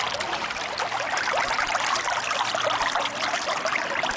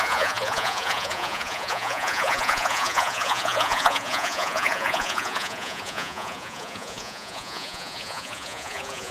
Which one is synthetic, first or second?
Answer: second